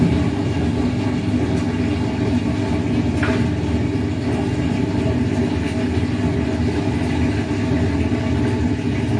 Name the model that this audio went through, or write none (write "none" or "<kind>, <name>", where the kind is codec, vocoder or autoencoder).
none